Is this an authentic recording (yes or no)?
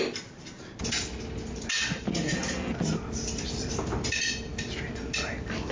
yes